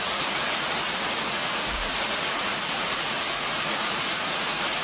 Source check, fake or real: fake